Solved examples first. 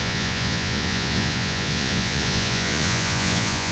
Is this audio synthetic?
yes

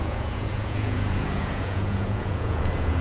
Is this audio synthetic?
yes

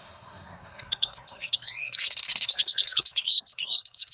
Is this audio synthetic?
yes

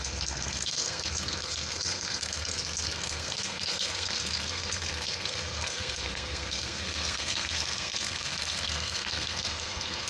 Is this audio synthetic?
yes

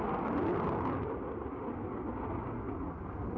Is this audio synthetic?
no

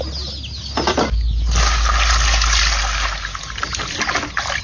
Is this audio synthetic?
no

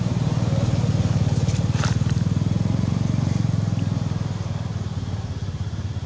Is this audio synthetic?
no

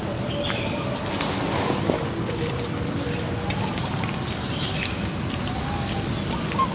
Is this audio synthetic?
no